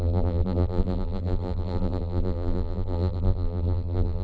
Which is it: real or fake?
fake